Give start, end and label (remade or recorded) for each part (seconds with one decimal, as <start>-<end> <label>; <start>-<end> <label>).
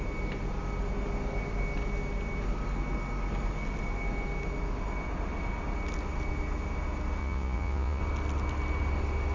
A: 0.0-7.2 recorded; 7.2-8.0 remade; 8.0-9.3 recorded